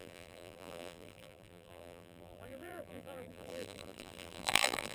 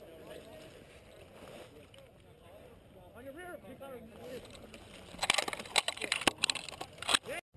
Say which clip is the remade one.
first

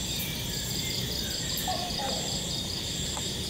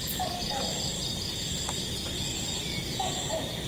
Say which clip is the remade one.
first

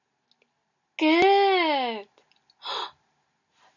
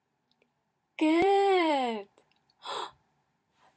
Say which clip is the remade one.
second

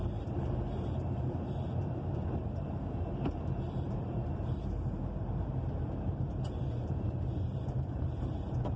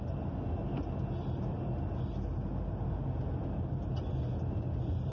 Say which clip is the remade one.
first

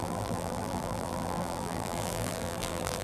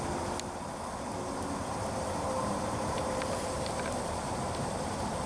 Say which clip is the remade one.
first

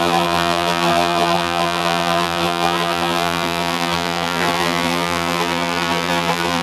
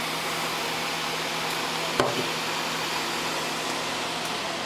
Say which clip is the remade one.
first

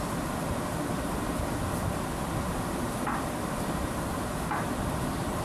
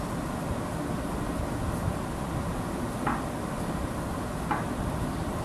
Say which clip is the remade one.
first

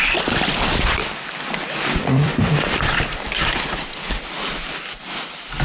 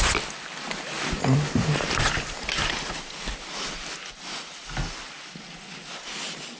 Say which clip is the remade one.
first